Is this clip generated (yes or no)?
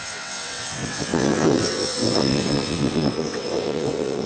yes